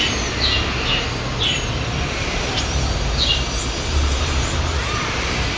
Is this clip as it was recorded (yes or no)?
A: yes